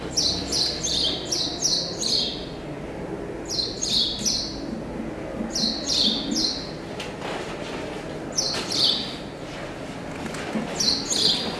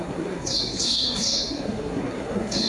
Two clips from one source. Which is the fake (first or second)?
second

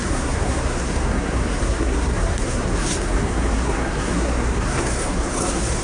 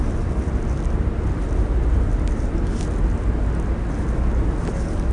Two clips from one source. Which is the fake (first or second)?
first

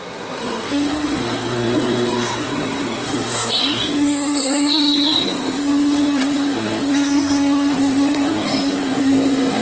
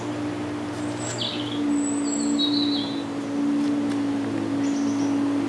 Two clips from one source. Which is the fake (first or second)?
first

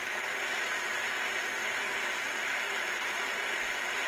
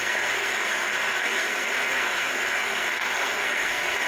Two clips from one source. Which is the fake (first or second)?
second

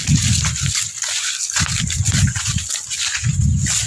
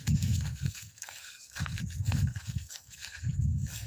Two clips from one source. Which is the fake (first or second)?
second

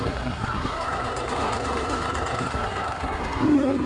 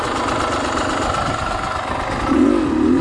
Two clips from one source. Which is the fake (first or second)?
first